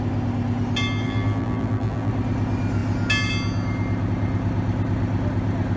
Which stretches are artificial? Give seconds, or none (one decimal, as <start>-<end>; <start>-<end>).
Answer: 1.0-2.1